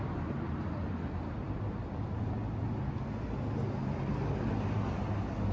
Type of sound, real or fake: real